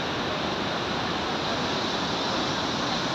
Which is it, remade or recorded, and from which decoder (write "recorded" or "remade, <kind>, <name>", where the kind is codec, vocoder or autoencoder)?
recorded